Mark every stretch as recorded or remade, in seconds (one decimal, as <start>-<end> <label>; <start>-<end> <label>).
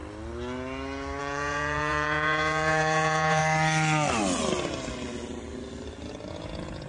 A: 0.0-1.2 recorded; 1.2-3.4 remade; 3.4-6.3 recorded; 6.3-6.9 remade